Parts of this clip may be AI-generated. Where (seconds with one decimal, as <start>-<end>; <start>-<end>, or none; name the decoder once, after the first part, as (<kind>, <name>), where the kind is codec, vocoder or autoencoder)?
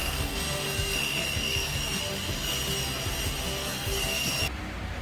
0.0-2.0 (codec, SNAC); 3.6-4.3